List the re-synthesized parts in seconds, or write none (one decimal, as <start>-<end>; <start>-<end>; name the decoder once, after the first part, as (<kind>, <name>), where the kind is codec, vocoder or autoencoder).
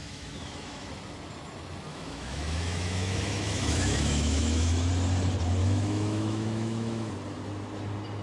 0.0-0.9 (autoencoder, DAC-VAE); 1.9-4.9; 5.6-7.1